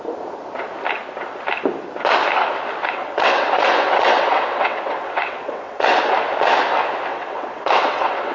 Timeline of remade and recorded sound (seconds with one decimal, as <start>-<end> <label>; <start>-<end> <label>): 0.0-2.8 recorded; 2.8-6.0 remade; 6.0-7.1 recorded; 7.1-8.3 remade